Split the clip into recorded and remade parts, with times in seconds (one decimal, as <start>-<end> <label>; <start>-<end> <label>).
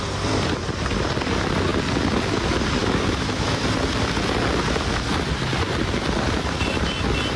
0.0-2.8 recorded; 2.8-3.6 remade; 3.6-7.4 recorded